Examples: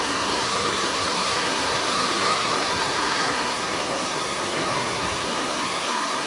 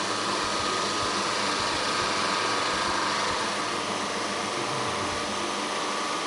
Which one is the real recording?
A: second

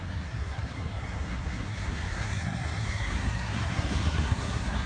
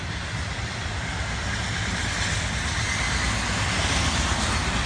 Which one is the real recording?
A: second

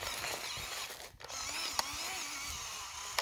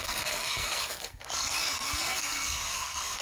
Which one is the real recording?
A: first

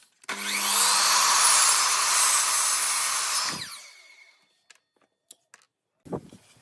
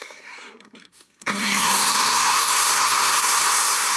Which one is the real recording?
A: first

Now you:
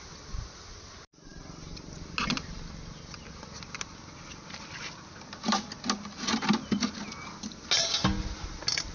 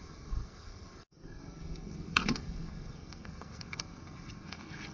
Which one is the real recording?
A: first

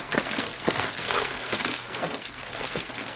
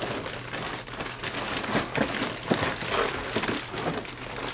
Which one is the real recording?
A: second